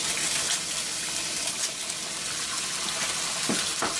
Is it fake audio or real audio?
real